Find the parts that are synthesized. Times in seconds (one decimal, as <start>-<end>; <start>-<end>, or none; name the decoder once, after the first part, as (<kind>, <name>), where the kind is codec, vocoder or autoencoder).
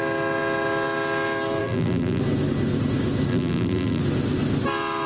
1.6-2.2 (vocoder, BigVGAN v2); 3.3-4.0